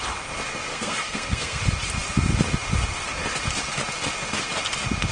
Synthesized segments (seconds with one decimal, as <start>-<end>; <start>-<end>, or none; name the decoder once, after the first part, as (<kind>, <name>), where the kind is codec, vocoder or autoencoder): 0.7-1.6 (codec, SNAC)